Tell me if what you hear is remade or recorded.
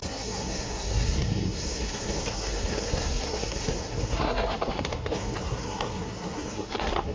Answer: remade